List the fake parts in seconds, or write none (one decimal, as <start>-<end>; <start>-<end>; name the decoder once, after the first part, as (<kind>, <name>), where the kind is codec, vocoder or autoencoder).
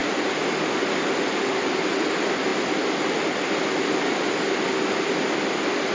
none